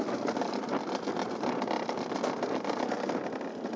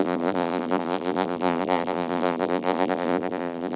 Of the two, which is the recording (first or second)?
first